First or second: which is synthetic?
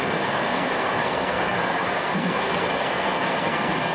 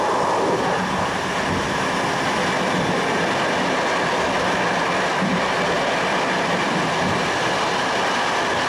first